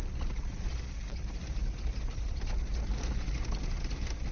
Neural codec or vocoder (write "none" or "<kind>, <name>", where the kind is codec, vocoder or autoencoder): none